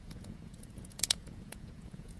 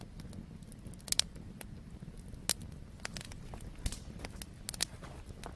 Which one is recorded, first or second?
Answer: second